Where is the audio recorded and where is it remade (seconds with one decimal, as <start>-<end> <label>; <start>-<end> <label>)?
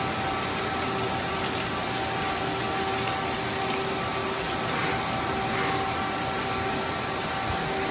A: 0.0-7.9 recorded